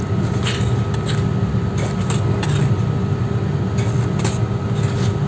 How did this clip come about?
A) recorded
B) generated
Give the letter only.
A